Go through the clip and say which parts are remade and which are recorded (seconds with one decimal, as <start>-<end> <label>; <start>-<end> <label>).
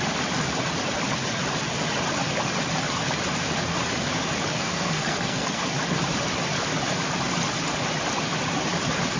0.0-4.5 recorded; 4.5-5.6 remade; 5.6-9.2 recorded